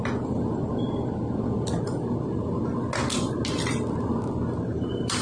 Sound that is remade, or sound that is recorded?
recorded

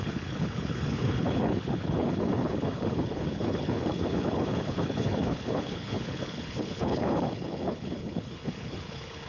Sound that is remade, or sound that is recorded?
remade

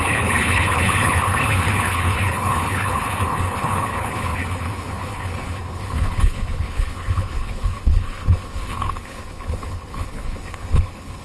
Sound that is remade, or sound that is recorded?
remade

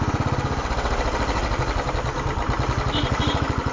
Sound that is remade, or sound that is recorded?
recorded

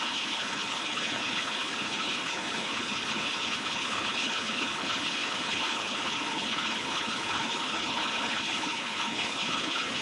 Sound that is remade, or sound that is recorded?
remade